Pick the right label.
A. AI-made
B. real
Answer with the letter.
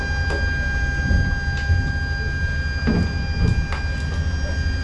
B